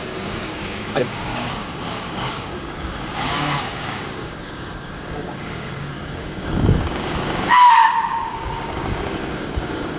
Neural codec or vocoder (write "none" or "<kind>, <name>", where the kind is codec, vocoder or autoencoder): codec, DAC